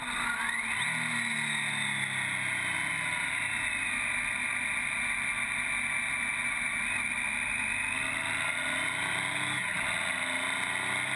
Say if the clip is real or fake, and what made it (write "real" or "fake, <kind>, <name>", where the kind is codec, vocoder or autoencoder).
real